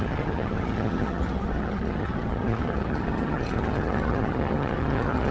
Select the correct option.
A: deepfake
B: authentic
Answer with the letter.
A